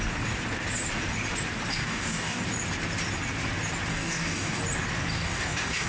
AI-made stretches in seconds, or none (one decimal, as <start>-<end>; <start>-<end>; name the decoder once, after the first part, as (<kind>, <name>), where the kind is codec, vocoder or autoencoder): 1.7-2.4 (codec, DAC); 3.9-4.6; 5.1-5.9